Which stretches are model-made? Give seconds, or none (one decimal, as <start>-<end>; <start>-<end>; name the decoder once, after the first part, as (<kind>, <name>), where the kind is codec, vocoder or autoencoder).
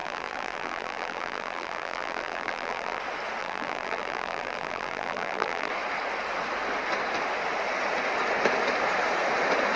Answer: 0.0-3.0 (vocoder, BigVGAN v2); 3.4-5.7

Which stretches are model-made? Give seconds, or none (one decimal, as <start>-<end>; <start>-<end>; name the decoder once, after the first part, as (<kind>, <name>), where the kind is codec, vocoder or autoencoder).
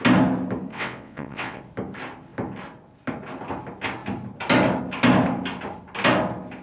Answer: 0.7-1.6 (vocoder, WaveNeXt)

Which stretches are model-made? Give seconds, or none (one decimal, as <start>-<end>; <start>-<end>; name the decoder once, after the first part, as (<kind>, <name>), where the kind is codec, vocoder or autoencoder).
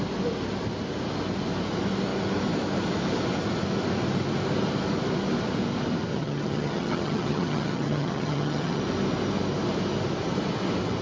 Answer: 6.1-8.8 (vocoder, HiFi-GAN)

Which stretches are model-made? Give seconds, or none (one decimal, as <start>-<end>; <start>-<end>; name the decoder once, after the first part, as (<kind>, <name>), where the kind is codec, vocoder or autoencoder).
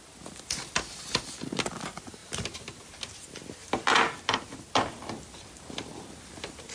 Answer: none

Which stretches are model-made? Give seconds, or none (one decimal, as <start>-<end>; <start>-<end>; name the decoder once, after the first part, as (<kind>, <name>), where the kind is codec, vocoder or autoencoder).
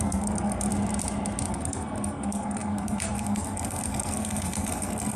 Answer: 0.0-0.7 (codec, SNAC); 1.5-5.2